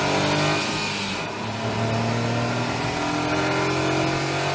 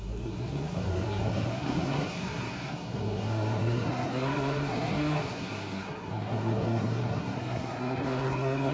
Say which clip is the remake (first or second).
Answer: second